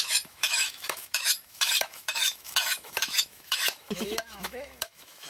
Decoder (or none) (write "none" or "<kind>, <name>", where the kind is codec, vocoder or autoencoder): autoencoder, DAC-VAE